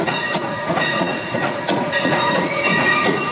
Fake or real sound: fake